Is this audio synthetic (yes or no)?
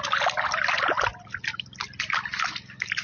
no